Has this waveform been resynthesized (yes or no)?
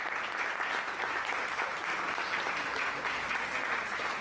no